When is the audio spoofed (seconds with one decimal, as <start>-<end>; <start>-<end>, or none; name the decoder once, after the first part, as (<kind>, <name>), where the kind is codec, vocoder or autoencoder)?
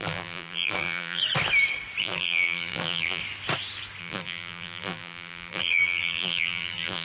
0.0-1.2 (vocoder, BigVGAN v2); 2.0-3.2; 4.0-7.0